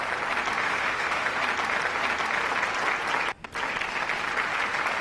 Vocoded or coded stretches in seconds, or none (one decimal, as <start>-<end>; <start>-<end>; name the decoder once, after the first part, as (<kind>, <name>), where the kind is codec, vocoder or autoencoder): 0.6-1.4 (autoencoder, DAC-VAE)